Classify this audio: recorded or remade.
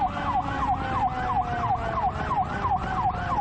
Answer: recorded